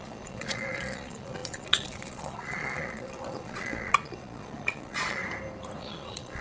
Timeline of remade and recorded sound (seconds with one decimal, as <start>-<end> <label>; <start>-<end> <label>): 0.0-5.2 remade; 5.2-5.8 recorded; 5.8-6.4 remade